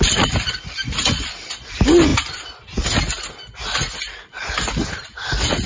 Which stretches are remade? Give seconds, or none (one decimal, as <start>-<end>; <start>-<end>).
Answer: none